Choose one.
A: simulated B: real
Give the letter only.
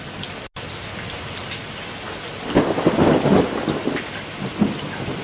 B